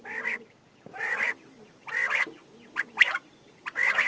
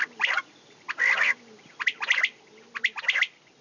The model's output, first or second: first